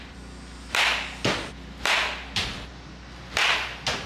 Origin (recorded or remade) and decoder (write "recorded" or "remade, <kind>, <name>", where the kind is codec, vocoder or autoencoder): recorded